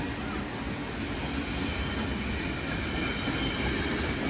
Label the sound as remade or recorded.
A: recorded